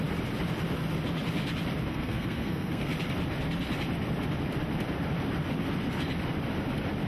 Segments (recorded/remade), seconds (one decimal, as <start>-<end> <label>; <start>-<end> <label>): 0.0-1.9 recorded; 1.9-2.9 remade; 2.9-7.1 recorded